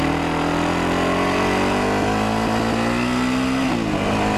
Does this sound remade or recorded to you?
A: recorded